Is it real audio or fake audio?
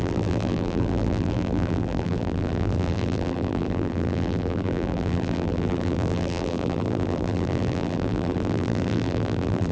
fake